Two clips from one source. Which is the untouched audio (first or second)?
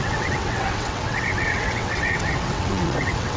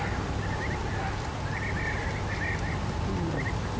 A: second